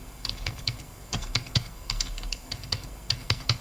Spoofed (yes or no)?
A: yes